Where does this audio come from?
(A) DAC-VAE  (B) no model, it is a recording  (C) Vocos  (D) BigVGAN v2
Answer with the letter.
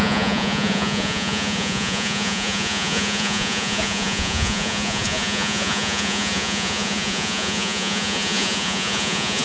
C